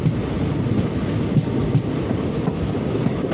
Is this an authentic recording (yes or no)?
yes